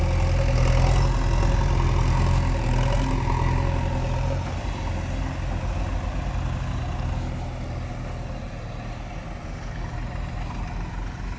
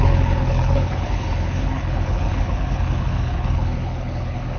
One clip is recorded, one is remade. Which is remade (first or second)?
second